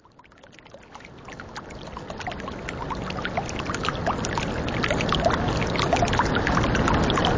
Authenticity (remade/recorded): recorded